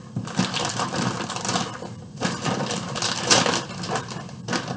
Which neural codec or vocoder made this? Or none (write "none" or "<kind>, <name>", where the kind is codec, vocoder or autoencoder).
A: none